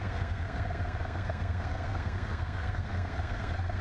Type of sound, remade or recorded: remade